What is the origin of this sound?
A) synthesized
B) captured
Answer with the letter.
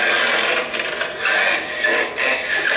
B